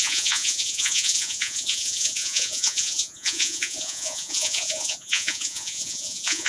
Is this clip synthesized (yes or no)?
yes